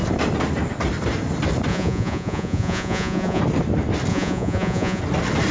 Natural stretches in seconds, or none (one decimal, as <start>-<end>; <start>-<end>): 0.0-1.7; 3.4-4.1; 5.0-5.5

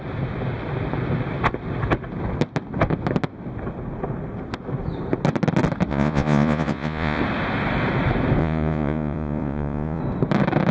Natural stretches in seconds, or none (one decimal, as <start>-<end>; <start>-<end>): 0.0-5.9; 7.2-8.4; 10.0-10.7

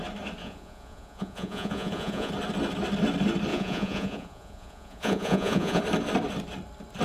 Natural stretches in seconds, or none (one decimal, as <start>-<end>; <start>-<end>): 0.0-0.4; 2.3-3.5; 5.8-7.0